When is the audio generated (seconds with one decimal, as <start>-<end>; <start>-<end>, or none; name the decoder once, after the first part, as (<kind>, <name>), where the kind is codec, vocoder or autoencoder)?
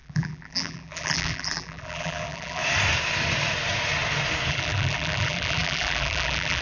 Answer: 0.0-2.6 (vocoder, BigVGAN v2); 4.5-6.6